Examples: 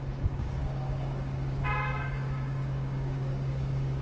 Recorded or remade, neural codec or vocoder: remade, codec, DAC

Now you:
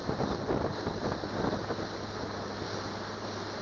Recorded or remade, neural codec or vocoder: recorded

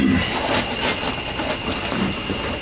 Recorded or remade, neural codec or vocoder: recorded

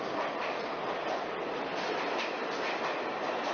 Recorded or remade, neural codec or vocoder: recorded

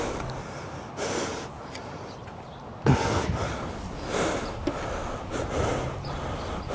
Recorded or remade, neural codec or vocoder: recorded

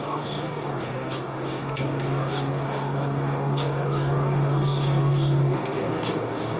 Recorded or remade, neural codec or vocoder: remade, codec, DAC